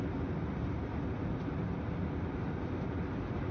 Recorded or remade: recorded